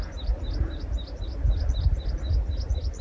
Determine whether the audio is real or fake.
real